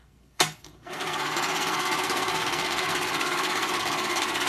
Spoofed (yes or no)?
yes